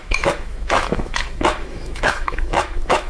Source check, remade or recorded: remade